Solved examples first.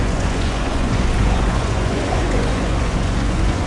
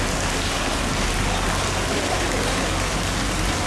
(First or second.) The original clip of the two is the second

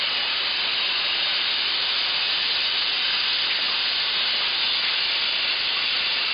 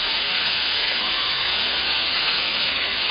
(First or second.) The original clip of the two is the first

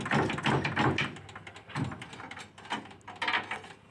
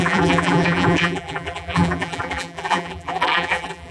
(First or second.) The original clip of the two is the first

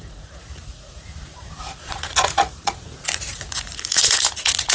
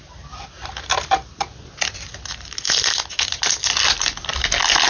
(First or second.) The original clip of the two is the second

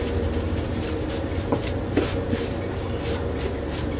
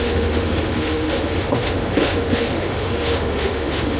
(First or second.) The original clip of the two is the first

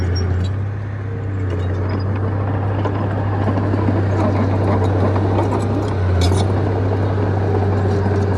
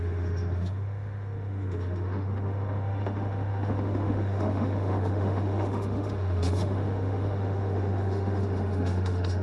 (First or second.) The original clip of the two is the first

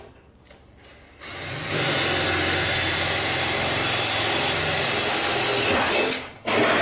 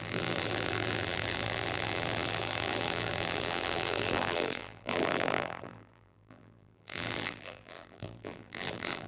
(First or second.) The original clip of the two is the first